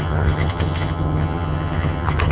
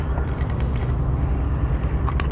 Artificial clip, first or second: first